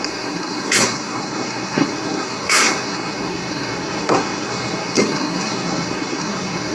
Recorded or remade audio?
remade